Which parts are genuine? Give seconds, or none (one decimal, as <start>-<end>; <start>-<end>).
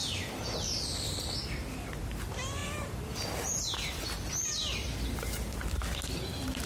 0.0-6.7